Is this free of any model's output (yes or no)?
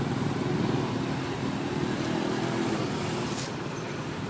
yes